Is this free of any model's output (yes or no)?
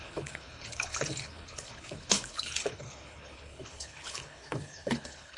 no